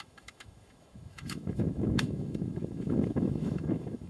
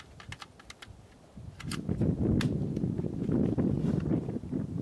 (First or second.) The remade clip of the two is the first